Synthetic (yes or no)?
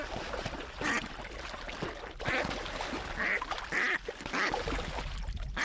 no